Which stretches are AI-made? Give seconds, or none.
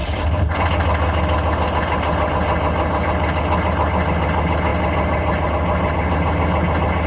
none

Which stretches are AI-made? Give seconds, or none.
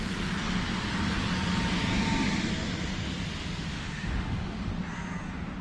3.7-4.7 (autoencoder, DAC-VAE)